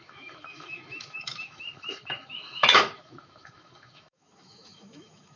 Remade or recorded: remade